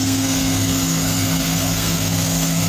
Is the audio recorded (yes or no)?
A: no